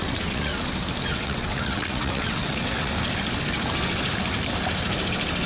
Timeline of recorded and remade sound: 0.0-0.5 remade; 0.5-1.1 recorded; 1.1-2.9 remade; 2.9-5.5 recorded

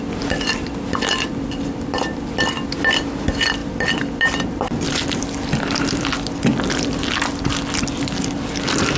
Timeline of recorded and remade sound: 0.0-9.0 recorded

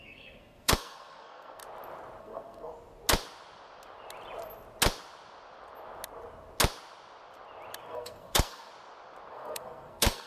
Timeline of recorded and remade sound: 0.0-1.6 remade; 1.6-2.2 recorded; 2.2-2.7 remade; 2.7-7.8 recorded; 7.8-8.7 remade; 8.7-9.3 recorded; 9.3-10.3 remade

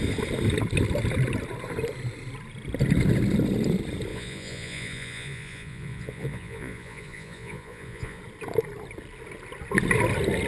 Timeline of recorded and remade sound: 0.0-4.1 recorded; 4.1-8.2 remade; 8.2-10.5 recorded

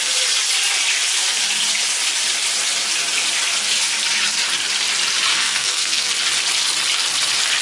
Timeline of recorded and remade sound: 0.0-5.3 recorded; 5.3-6.1 remade; 6.1-7.6 recorded

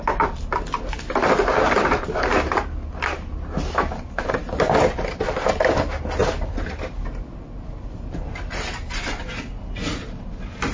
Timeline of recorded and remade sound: 0.0-10.7 recorded

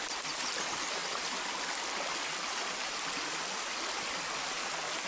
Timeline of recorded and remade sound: 0.0-5.1 recorded

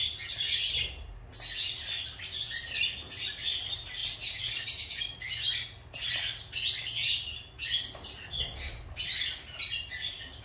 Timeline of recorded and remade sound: 0.0-10.4 recorded